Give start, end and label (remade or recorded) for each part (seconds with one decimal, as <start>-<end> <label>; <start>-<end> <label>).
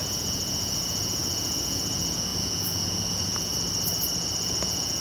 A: 0.0-3.5 remade; 3.5-4.4 recorded; 4.4-5.0 remade